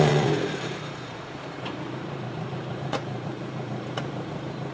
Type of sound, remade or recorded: remade